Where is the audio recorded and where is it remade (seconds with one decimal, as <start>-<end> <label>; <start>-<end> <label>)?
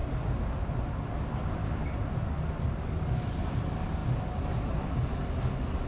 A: 0.0-5.9 recorded